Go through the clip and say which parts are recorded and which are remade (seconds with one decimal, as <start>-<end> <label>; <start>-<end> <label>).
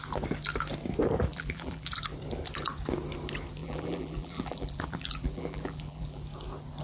0.0-1.3 recorded; 1.3-1.9 remade; 1.9-3.6 recorded; 3.6-6.2 remade; 6.2-6.8 recorded